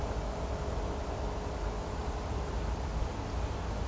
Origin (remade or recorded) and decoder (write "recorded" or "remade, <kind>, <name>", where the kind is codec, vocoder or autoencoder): recorded